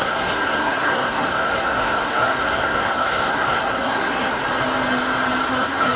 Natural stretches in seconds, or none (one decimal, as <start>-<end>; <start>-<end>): 4.4-5.5